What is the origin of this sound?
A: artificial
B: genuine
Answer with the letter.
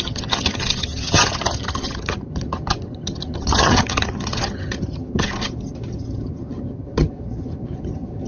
A